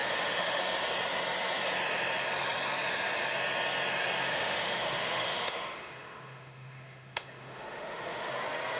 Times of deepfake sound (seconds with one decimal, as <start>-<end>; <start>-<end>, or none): 0.0-0.6; 4.3-8.3